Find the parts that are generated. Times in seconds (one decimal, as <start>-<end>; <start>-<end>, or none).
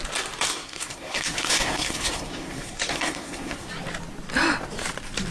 0.5-3.7